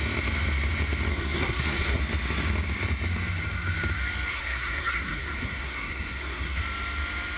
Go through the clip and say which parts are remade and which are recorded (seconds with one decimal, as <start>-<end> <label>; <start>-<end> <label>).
0.0-1.1 recorded; 1.1-2.0 remade; 2.0-4.3 recorded; 4.3-6.6 remade; 6.6-7.4 recorded